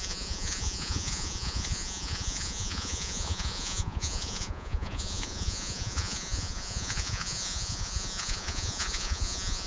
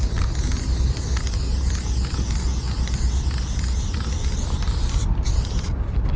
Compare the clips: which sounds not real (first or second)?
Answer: first